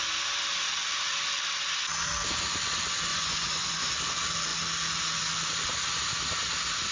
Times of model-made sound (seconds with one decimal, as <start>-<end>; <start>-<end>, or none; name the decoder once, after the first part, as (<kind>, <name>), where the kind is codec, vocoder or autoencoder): 3.1-3.9 (vocoder, Vocos)